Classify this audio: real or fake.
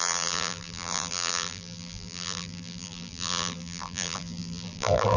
fake